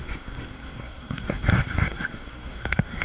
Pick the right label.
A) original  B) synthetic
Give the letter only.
B